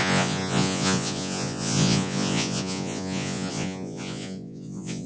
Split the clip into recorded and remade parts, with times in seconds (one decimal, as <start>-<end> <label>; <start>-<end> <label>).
0.0-5.1 remade